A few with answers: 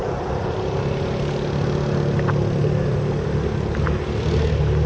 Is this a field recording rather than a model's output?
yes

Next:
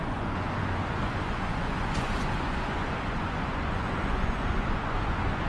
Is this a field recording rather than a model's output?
no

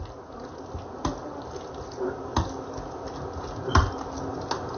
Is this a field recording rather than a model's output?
yes